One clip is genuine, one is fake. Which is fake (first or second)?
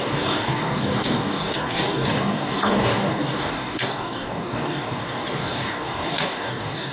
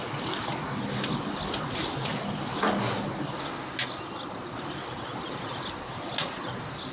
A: first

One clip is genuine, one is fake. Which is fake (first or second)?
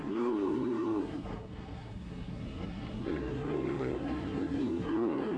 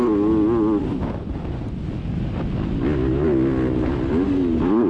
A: first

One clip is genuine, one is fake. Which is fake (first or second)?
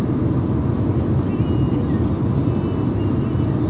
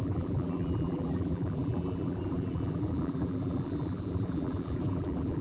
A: second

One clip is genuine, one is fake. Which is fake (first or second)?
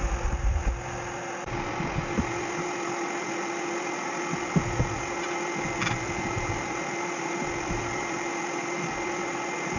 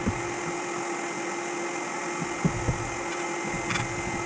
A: first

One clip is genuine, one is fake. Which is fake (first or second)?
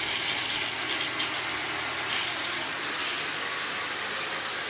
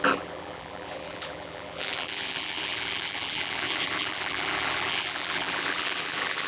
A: second